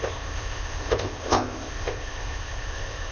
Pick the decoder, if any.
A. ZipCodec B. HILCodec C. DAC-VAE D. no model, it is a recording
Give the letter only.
A